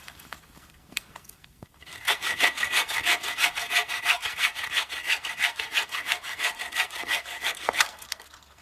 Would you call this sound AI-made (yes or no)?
yes